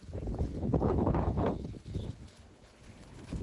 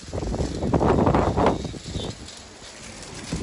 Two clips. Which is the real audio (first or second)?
second